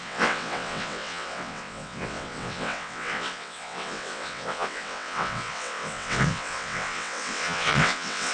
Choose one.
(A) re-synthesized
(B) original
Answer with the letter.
A